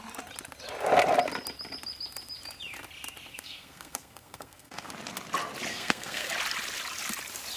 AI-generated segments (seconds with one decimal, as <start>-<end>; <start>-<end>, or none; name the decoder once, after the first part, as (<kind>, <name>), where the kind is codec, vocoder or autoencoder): 3.3-4.9 (codec, SNAC); 5.7-6.3